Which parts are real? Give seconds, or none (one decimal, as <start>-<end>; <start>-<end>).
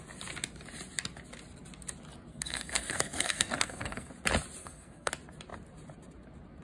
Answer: 0.0-2.3; 4.1-4.6; 5.1-6.6